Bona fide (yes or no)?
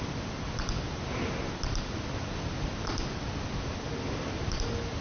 yes